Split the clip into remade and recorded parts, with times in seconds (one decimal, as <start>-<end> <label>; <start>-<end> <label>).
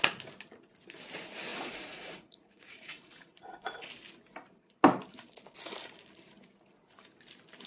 0.0-1.5 recorded; 1.5-3.9 remade; 3.9-7.7 recorded